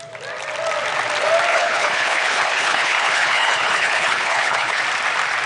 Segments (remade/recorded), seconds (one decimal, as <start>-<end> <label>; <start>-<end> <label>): 0.0-1.5 recorded; 1.5-4.8 remade; 4.8-5.5 recorded